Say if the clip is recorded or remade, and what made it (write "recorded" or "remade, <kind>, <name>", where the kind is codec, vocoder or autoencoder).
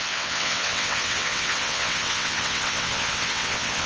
remade, vocoder, WaveNeXt